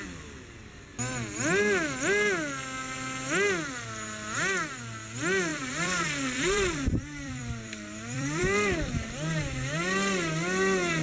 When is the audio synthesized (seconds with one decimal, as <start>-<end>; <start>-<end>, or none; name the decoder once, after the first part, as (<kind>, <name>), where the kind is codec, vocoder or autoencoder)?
5.5-8.9 (vocoder, BigVGAN v2)